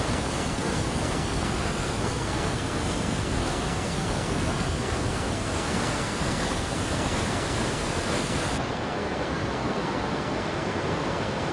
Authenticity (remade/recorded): remade